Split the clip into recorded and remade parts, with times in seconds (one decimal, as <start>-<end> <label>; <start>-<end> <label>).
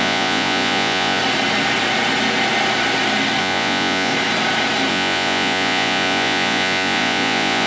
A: 0.0-1.2 remade; 1.2-3.4 recorded; 3.4-4.1 remade; 4.1-4.9 recorded; 4.9-7.7 remade